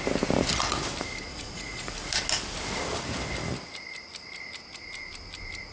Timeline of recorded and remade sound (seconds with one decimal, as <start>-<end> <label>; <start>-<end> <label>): 0.0-1.3 recorded; 1.3-1.9 remade; 1.9-5.7 recorded